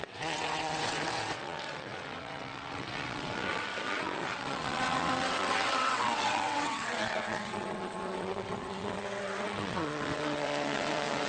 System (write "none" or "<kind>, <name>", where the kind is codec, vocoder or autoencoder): vocoder, WaveNeXt